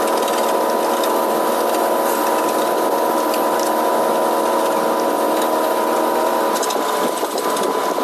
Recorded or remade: recorded